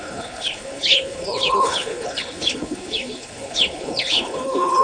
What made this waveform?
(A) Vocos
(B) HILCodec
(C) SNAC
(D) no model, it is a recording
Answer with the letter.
B